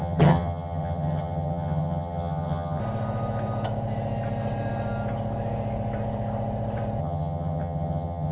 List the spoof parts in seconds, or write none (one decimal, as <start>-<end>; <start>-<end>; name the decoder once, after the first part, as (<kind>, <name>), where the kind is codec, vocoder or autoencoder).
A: 0.0-2.8 (vocoder, HiFi-GAN); 7.0-8.3